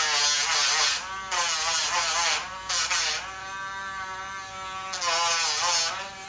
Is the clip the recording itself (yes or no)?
yes